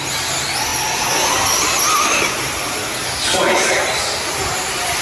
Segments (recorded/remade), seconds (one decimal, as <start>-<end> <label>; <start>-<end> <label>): 0.0-5.0 recorded